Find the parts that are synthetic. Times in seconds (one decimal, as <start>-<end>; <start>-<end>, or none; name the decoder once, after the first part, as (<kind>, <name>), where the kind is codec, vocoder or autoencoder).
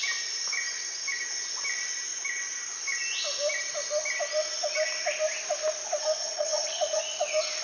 6.2-7.0 (vocoder, HiFi-GAN)